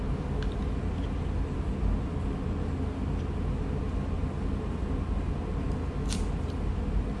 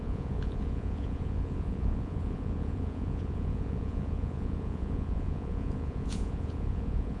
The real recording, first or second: first